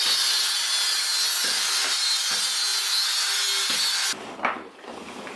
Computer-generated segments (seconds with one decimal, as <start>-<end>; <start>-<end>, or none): none